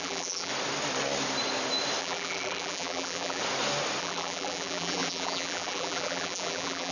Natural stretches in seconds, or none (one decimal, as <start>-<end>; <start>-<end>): 0.5-2.0; 3.4-4.0